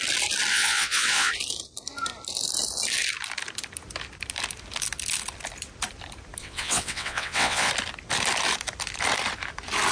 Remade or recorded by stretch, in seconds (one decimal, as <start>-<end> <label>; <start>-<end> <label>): 0.0-0.5 recorded; 0.5-1.3 remade; 1.3-6.4 recorded; 6.4-7.7 remade; 7.7-9.9 recorded